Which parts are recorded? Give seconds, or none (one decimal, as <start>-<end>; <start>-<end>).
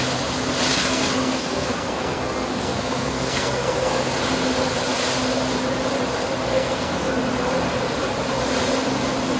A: 0.0-0.7; 4.1-6.5; 7.1-9.4